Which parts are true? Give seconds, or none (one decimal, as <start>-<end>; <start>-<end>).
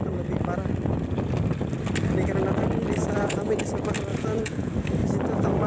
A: 0.0-3.0; 3.6-4.1; 4.7-5.7